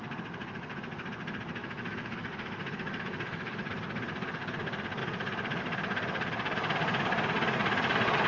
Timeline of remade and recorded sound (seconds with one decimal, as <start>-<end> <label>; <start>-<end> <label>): 0.0-1.6 recorded; 1.6-3.7 remade; 3.7-8.3 recorded